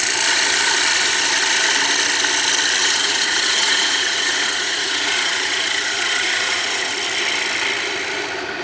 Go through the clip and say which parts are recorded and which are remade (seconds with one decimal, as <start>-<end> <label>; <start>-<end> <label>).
0.0-2.8 recorded; 2.8-6.9 remade; 6.9-8.6 recorded